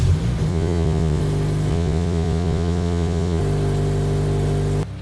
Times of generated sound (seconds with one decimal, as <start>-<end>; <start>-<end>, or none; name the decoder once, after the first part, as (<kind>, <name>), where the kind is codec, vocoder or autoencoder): 0.5-1.2 (vocoder, Vocos); 1.7-3.4